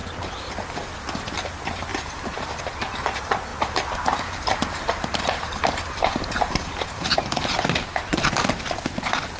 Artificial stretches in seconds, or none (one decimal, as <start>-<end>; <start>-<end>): 0.0-0.5; 1.9-2.6; 3.5-8.6